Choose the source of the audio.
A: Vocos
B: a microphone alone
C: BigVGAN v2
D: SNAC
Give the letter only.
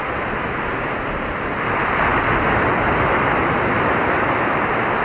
B